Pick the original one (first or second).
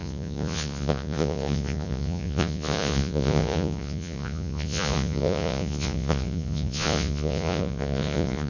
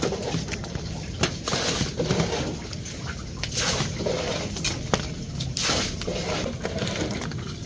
second